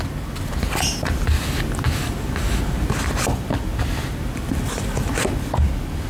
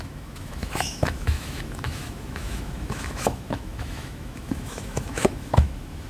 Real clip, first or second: first